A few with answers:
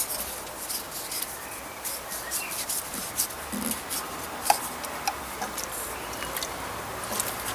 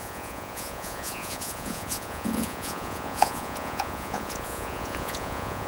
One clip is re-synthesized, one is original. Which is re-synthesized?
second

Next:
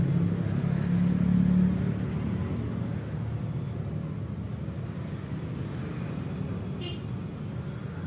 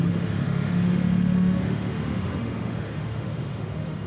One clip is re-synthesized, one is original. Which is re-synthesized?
second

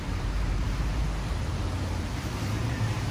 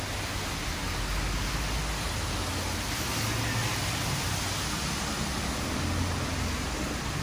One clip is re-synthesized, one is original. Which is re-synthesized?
first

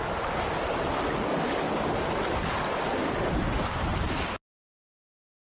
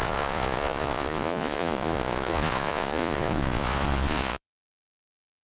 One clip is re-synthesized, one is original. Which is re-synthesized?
second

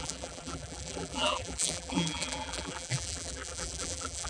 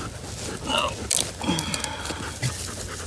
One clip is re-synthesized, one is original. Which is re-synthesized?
first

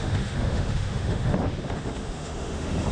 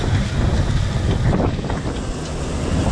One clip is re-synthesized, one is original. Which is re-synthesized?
first